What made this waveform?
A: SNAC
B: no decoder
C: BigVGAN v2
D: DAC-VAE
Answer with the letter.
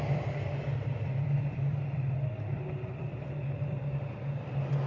C